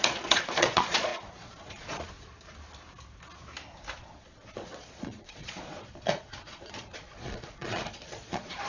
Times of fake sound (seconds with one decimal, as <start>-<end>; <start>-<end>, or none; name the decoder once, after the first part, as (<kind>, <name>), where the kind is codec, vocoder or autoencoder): 0.0-2.3 (vocoder, Vocos); 4.0-8.7